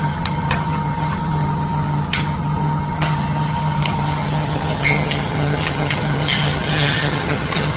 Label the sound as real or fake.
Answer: fake